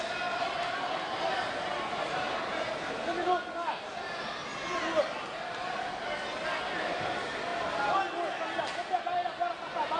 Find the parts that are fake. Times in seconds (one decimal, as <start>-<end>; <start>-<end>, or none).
none